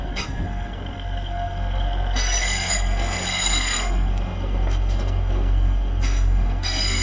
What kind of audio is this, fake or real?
fake